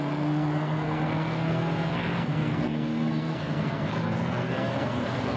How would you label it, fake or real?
fake